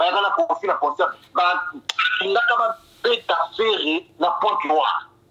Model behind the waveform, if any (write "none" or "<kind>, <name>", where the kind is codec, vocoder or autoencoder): none